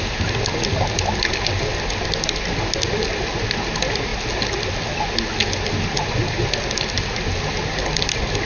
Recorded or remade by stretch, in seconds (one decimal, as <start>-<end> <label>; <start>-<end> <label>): 0.0-8.4 recorded